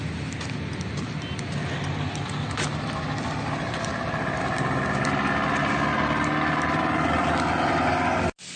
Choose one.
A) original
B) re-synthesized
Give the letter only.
A